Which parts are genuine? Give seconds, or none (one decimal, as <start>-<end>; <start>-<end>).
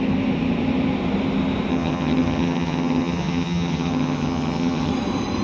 0.0-1.7; 4.9-5.4